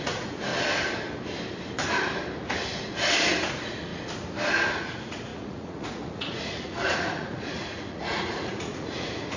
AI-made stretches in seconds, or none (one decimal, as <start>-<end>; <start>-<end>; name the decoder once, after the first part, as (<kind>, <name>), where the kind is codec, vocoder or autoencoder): 0.0-0.5 (vocoder, Vocos); 3.5-3.9; 4.5-9.4